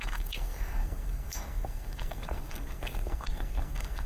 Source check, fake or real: fake